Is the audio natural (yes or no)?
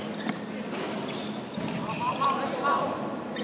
yes